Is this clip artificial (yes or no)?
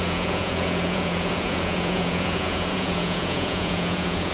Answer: yes